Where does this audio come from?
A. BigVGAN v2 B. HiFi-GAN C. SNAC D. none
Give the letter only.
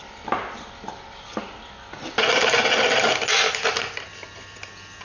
D